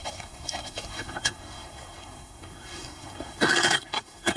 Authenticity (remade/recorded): remade